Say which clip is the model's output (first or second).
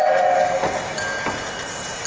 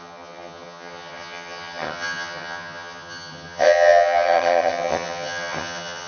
second